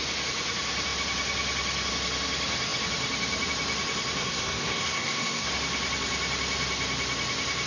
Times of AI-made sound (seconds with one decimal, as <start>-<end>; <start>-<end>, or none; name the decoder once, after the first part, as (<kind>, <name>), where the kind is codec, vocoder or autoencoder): 4.2-5.5 (codec, SNAC)